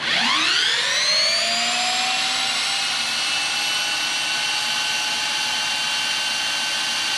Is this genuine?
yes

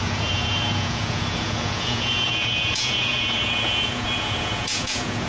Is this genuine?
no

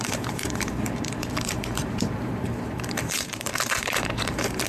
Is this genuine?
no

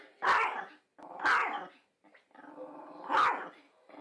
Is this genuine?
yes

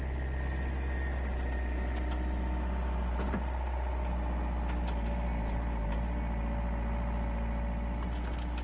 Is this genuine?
yes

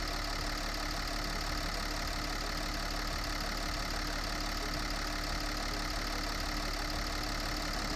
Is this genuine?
yes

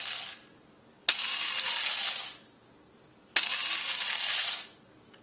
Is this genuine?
yes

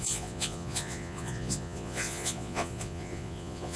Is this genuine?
no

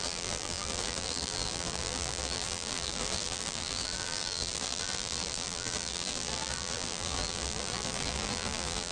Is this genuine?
no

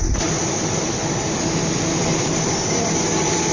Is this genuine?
no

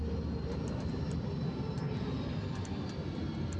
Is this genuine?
yes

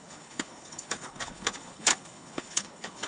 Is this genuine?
no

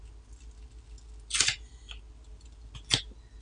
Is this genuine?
yes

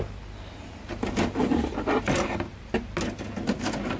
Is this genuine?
yes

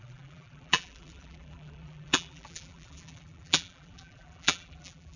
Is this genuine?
no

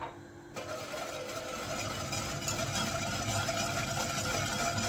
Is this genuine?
yes